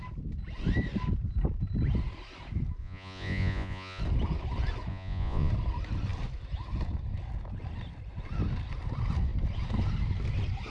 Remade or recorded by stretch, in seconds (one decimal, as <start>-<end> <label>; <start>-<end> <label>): 0.0-2.8 recorded; 2.8-4.0 remade; 4.0-4.9 recorded; 4.9-5.5 remade; 5.5-10.7 recorded